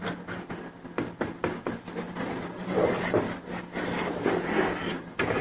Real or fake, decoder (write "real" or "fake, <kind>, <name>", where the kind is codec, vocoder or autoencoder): real